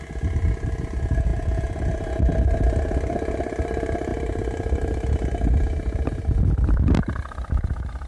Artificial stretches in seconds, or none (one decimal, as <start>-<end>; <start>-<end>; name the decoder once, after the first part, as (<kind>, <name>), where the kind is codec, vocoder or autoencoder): none